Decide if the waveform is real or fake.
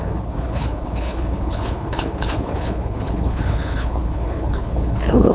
fake